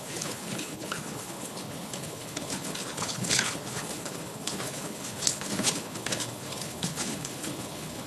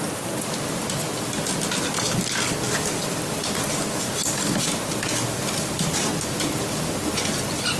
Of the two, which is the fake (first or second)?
first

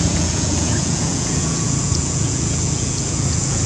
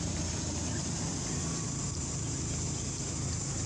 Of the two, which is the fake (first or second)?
first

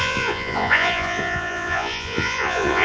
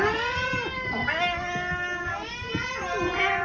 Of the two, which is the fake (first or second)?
first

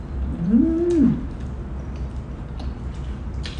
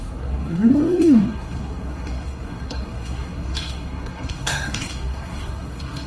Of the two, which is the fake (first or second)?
second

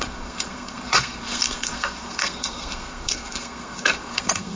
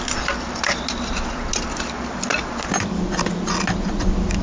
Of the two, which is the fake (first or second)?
first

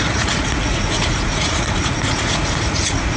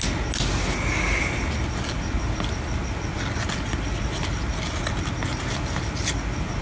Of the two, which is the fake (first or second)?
first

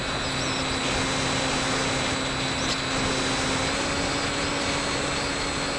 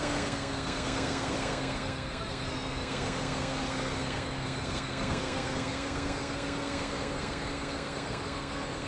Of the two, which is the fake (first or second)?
second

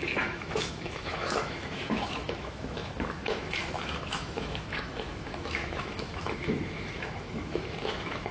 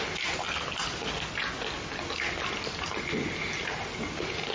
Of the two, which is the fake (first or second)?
first